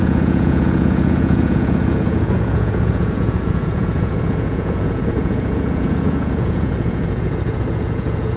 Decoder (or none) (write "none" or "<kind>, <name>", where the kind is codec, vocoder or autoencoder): vocoder, Vocos